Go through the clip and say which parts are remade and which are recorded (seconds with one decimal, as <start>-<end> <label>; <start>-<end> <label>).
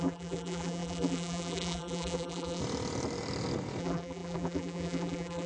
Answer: 0.0-2.6 remade; 2.6-3.8 recorded; 3.8-5.5 remade